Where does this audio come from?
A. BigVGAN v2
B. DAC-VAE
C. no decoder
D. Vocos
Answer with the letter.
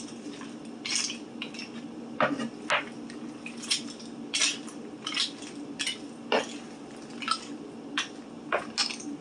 C